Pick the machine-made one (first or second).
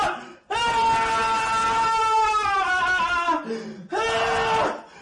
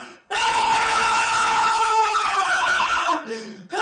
second